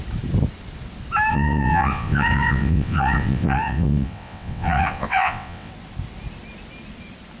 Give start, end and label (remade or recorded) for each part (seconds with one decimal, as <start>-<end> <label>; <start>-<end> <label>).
0.0-1.3 recorded; 1.3-5.7 remade; 5.7-7.4 recorded